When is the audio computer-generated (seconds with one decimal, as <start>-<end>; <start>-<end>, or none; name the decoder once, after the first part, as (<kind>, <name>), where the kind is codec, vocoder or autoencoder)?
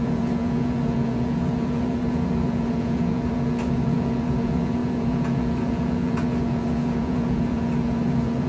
0.0-8.5 (vocoder, Vocos)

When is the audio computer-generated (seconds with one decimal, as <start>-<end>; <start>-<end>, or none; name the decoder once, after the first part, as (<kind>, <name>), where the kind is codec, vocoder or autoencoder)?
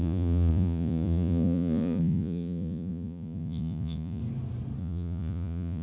0.0-4.2 (vocoder, Vocos); 4.8-5.8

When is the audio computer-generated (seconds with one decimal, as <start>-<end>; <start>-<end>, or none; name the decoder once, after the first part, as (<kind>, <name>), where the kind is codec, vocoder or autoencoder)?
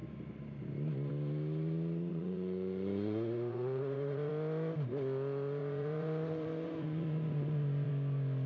2.1-4.3 (vocoder, Vocos); 5.6-7.9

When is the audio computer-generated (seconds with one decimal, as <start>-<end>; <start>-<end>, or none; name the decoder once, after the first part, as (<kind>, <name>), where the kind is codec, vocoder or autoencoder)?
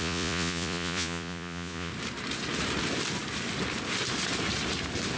0.0-1.9 (vocoder, Vocos)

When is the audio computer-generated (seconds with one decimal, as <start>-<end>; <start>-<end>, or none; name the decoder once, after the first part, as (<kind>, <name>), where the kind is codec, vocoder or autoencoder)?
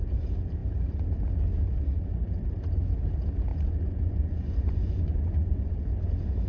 3.5-5.7 (vocoder, Vocos)